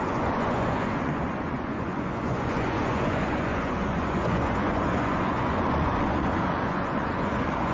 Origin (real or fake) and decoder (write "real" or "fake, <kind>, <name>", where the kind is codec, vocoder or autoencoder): fake, vocoder, Vocos